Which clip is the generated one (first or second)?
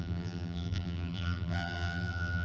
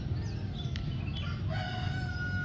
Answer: first